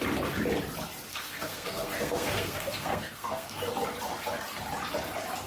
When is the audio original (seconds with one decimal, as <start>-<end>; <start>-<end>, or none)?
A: 0.0-1.1; 3.7-5.5